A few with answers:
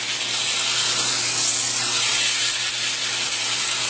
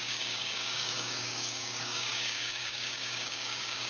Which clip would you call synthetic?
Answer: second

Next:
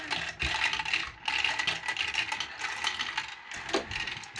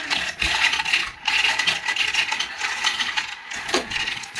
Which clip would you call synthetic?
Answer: second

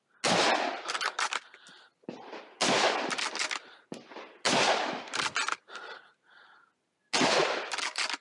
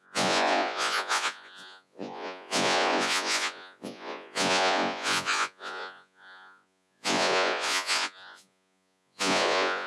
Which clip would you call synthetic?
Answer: second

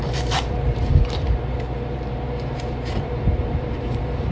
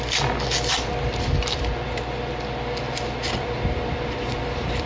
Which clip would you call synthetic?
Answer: first